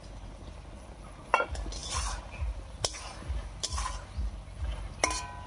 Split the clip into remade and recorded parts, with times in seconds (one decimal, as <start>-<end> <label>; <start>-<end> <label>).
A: 0.0-5.5 recorded